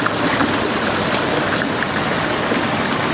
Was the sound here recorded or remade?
recorded